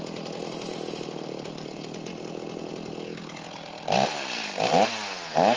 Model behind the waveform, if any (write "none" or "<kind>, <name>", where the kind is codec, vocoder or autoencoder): none